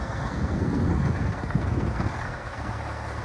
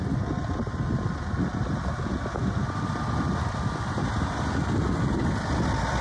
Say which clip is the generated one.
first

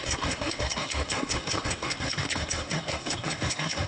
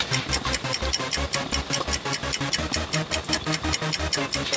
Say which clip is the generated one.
first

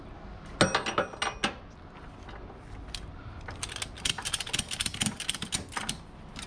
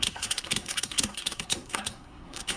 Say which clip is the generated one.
second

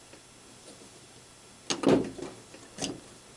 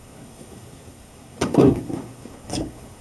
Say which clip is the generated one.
second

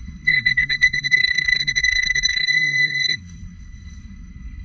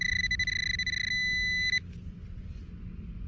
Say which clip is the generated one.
first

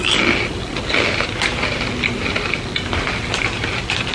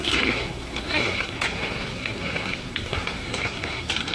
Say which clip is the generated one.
second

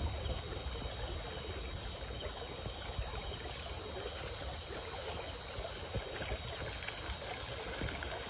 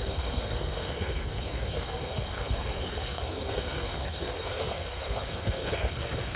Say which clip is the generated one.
second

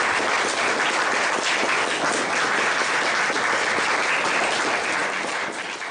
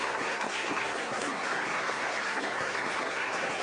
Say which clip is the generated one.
second